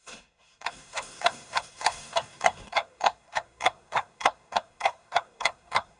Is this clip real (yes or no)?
no